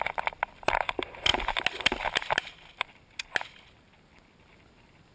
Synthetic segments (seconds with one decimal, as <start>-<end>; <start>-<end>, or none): 0.0-1.3; 4.4-5.1